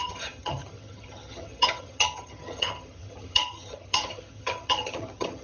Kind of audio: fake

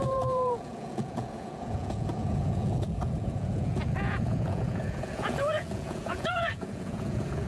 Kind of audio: fake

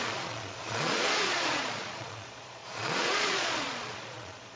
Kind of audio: fake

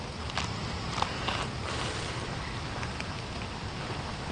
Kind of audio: real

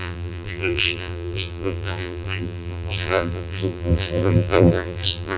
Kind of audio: fake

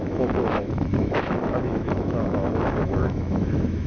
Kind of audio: fake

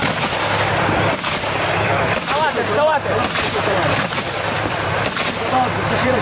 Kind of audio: fake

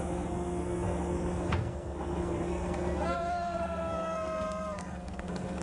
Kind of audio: fake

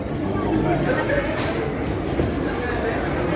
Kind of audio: real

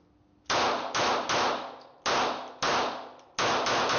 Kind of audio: real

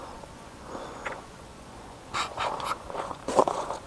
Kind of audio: fake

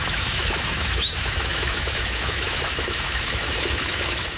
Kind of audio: fake